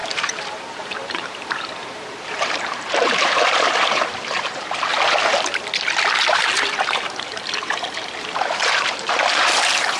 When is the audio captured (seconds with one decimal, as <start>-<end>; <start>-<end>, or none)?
4.9-6.3